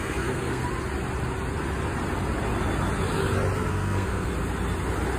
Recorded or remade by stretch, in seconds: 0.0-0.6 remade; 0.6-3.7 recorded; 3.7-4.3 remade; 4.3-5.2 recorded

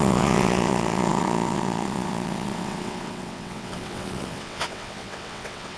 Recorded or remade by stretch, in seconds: 0.0-5.8 remade